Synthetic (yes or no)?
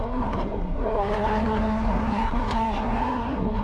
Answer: yes